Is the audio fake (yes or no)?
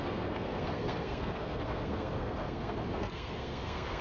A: yes